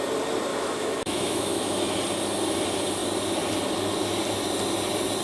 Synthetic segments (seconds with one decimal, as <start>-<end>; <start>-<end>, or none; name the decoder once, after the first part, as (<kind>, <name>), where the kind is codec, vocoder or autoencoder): 0.5-2.0 (autoencoder, DAC-VAE)